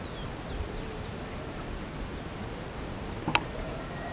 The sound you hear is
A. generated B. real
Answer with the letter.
B